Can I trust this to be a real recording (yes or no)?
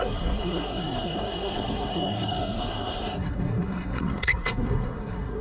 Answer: no